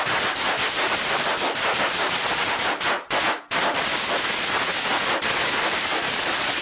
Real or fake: real